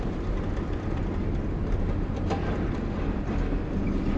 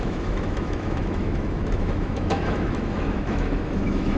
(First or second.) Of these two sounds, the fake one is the second